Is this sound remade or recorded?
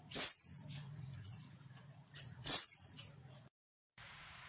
remade